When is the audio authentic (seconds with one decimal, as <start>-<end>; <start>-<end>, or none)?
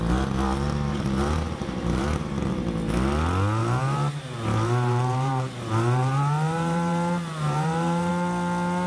0.0-0.9; 2.5-3.6; 8.1-8.9